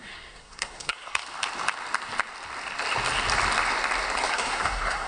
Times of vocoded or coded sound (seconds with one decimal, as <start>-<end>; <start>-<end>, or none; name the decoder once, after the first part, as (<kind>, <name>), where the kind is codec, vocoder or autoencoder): 0.0-1.2 (codec, SNAC); 4.3-5.1